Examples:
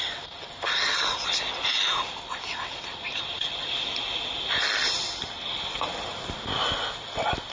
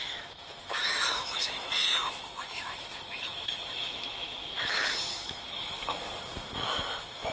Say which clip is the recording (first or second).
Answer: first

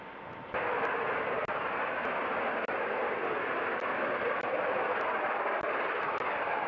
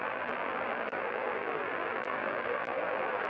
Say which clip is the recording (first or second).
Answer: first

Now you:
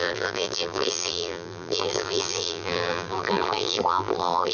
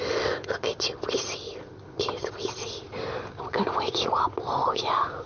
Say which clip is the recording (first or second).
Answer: second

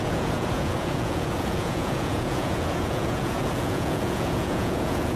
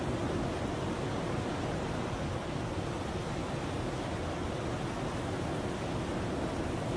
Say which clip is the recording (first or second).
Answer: second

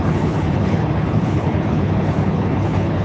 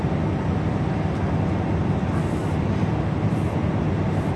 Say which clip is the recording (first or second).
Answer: second